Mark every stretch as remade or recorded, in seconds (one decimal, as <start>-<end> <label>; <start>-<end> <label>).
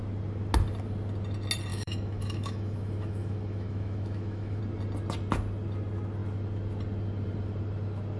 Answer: 0.0-1.7 recorded; 1.7-4.6 remade; 4.6-8.2 recorded